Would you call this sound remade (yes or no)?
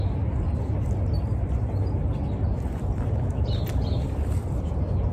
no